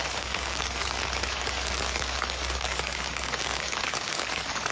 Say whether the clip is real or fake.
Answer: fake